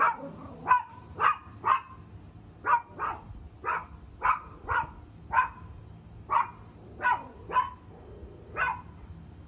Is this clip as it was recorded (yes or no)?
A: yes